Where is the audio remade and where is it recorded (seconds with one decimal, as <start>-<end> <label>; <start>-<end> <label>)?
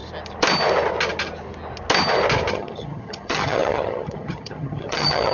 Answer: 0.0-2.5 recorded; 2.5-5.3 remade